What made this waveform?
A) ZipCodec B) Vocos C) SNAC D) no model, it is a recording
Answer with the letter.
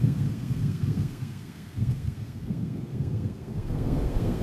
C